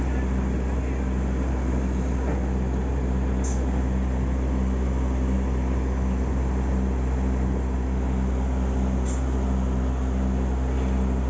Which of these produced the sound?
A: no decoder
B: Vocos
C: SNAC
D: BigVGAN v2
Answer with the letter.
A